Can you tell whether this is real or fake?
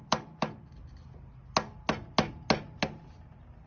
real